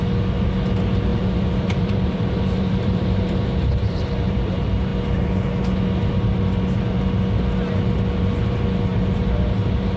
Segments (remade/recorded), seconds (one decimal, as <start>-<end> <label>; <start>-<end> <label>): 0.0-1.1 recorded; 1.1-4.5 remade; 4.5-10.0 recorded